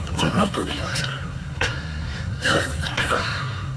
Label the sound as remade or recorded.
remade